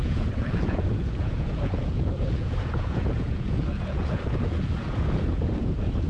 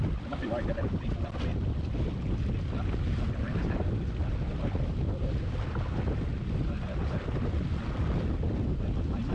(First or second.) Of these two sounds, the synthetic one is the first